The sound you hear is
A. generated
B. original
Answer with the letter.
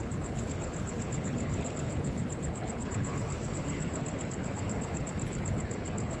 A